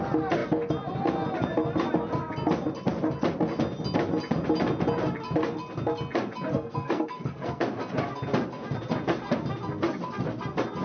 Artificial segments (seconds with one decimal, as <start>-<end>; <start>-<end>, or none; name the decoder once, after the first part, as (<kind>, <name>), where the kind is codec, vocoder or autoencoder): 6.5-7.6 (codec, SNAC)

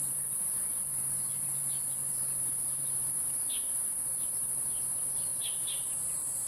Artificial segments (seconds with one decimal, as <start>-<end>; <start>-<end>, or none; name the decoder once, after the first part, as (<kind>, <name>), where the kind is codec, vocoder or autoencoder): none

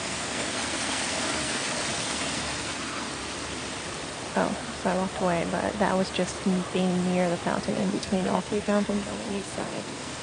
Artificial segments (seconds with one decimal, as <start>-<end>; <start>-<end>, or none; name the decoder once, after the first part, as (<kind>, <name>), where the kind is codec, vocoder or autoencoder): 0.0-3.2 (codec, SNAC); 7.7-10.2